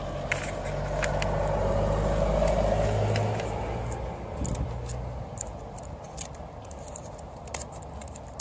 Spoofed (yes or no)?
no